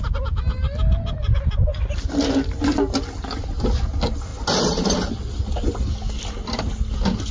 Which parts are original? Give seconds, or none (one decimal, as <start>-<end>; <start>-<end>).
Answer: 0.0-7.3